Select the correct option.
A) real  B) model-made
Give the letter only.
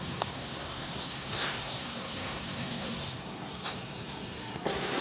B